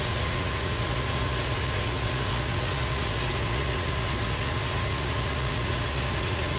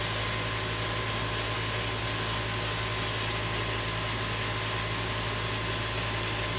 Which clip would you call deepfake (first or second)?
first